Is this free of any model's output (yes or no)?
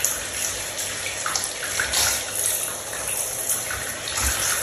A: yes